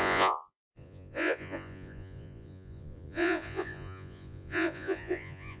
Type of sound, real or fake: fake